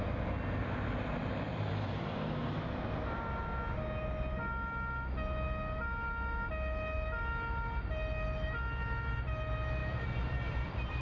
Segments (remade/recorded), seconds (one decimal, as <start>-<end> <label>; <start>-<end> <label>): 0.0-1.2 recorded; 1.2-3.2 remade; 3.2-9.8 recorded; 9.8-11.0 remade

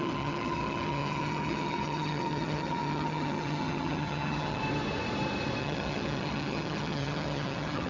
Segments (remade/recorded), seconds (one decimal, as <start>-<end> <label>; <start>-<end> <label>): 0.0-4.6 remade; 4.6-5.6 recorded; 5.6-7.9 remade

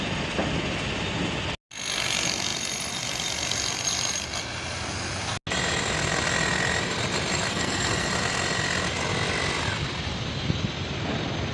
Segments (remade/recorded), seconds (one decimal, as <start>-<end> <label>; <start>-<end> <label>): 0.0-7.5 recorded; 7.5-8.1 remade; 8.1-11.5 recorded

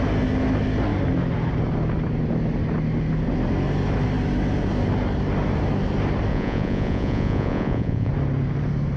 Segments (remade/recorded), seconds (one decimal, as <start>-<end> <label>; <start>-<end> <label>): 0.0-6.3 recorded; 6.3-8.1 remade; 8.1-9.0 recorded

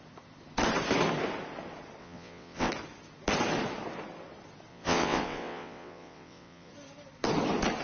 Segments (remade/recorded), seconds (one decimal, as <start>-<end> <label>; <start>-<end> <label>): 0.0-2.0 recorded; 2.0-2.7 remade; 2.7-4.7 recorded; 4.7-6.7 remade; 6.7-7.8 recorded

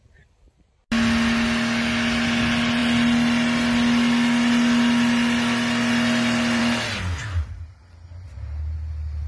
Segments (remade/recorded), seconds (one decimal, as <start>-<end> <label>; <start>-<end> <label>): 0.0-9.3 recorded

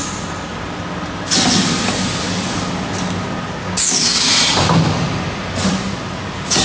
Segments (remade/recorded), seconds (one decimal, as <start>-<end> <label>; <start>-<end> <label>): 0.0-3.6 recorded; 3.6-4.3 remade; 4.3-6.6 recorded

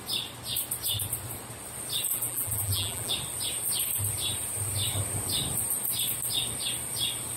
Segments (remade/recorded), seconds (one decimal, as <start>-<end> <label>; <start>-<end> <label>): 0.0-2.1 recorded; 2.1-3.1 remade; 3.1-7.4 recorded